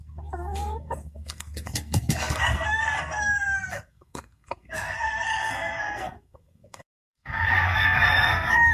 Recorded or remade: remade